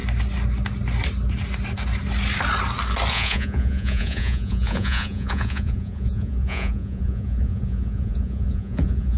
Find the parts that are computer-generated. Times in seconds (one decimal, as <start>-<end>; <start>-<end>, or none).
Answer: 3.1-9.2